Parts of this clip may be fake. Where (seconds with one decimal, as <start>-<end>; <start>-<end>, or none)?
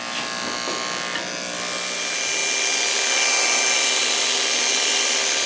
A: none